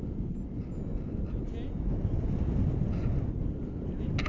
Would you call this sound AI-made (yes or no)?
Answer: no